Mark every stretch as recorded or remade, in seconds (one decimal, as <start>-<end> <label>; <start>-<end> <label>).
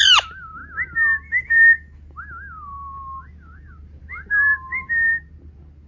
0.0-0.6 remade; 0.6-4.1 recorded; 4.1-5.1 remade; 5.1-5.9 recorded